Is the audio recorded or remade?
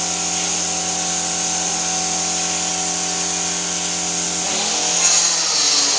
recorded